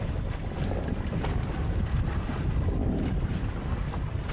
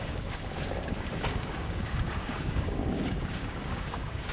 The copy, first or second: second